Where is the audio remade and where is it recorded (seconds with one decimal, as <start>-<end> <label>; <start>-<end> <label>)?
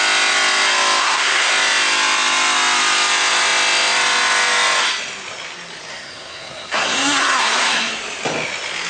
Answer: 0.0-1.0 recorded; 1.0-1.5 remade; 1.5-5.9 recorded; 5.9-7.9 remade; 7.9-8.9 recorded